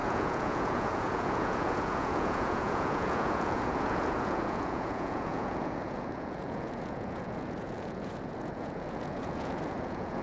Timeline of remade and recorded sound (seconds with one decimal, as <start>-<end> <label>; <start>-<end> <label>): 0.0-10.2 remade